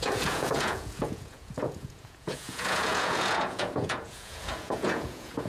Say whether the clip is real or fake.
fake